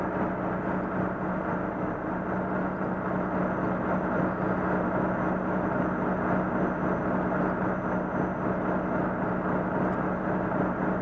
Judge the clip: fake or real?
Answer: real